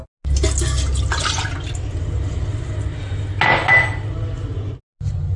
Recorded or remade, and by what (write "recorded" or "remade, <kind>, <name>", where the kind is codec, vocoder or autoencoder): recorded